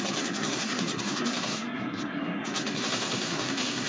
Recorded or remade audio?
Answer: remade